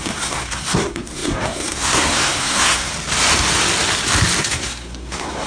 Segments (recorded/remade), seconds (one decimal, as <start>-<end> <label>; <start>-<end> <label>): 0.0-2.9 remade; 2.9-4.4 recorded; 4.4-5.5 remade